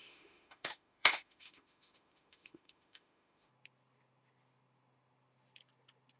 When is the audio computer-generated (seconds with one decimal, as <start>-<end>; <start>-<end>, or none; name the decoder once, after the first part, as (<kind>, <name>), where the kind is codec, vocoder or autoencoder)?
0.0-3.5 (autoencoder, DAC-VAE)